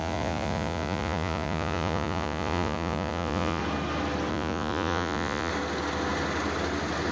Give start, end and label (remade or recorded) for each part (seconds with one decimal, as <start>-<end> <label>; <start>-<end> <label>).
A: 0.0-3.6 remade; 3.6-4.3 recorded; 4.3-5.5 remade; 5.5-7.1 recorded